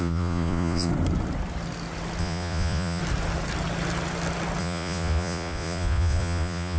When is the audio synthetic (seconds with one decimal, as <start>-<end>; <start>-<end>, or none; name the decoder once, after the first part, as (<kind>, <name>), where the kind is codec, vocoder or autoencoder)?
0.0-0.9 (vocoder, Vocos); 2.2-3.0; 4.6-6.8